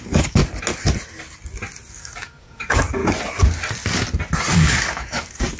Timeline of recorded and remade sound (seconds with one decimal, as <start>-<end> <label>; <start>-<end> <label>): 0.0-0.4 remade; 0.4-1.9 recorded; 1.9-3.0 remade; 3.0-4.5 recorded; 4.5-5.6 remade

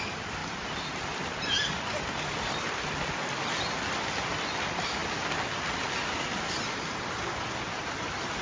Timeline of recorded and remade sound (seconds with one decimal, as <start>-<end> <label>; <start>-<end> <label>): 0.0-8.4 recorded

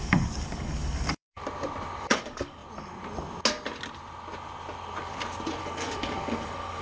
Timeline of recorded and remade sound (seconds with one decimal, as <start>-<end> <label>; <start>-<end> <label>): 0.0-1.4 remade; 1.4-2.0 recorded; 2.0-2.6 remade; 2.6-5.6 recorded; 5.6-6.8 remade